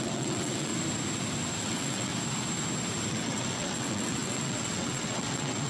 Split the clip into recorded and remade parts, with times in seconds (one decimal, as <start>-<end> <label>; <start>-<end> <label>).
0.0-0.7 remade; 0.7-1.6 recorded; 1.6-2.1 remade; 2.1-3.1 recorded; 3.1-5.7 remade